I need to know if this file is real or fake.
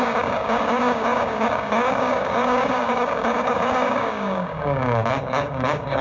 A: fake